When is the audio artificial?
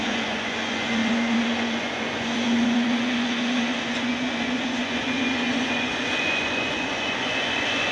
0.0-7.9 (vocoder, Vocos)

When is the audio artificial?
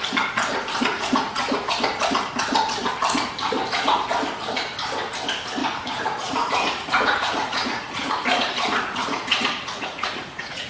0.9-1.6 (vocoder, Vocos); 5.6-10.7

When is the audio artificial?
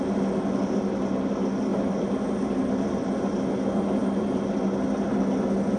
none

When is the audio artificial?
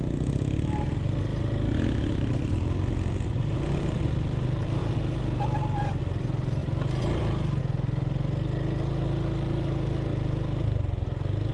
6.6-7.6 (vocoder, BigVGAN v2)